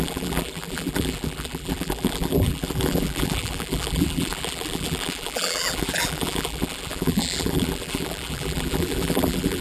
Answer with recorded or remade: remade